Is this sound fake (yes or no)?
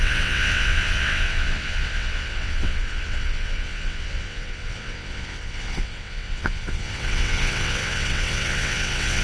yes